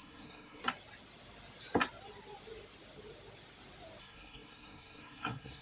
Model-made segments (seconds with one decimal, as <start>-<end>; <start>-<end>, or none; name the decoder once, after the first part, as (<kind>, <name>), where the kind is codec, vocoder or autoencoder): 0.0-0.6 (codec, SNAC); 4.0-5.6